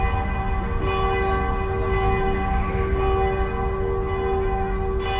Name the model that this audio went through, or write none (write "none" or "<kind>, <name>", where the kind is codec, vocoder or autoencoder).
none